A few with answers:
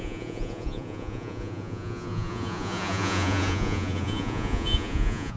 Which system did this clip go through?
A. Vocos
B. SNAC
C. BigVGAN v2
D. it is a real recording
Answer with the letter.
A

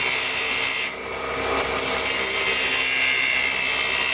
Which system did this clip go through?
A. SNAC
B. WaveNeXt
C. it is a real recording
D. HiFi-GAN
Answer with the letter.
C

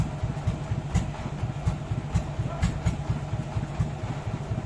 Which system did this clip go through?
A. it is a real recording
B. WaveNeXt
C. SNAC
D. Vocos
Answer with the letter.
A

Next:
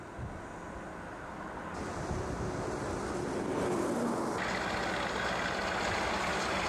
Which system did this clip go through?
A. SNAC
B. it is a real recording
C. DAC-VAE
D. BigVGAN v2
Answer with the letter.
B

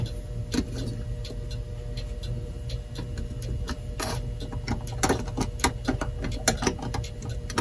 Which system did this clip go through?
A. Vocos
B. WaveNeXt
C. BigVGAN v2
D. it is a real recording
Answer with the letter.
D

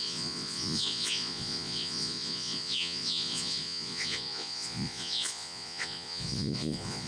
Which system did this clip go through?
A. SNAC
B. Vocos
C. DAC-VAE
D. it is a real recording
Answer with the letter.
B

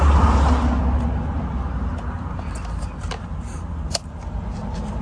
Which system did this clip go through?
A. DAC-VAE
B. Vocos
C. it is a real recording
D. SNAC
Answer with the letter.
C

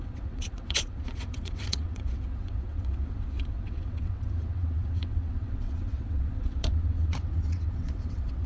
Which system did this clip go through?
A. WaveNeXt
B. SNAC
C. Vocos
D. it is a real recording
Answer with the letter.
A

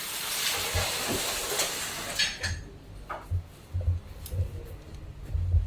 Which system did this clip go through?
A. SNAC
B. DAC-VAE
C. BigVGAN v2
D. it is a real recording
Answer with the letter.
D